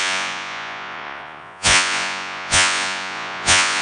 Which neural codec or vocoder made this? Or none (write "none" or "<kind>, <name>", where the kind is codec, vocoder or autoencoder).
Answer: vocoder, Vocos